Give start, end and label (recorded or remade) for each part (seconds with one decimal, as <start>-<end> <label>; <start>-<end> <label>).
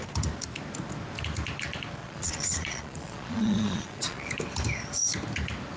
0.0-2.0 recorded; 2.0-4.3 remade; 4.3-5.8 recorded